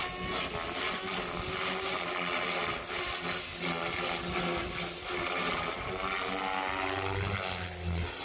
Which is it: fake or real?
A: real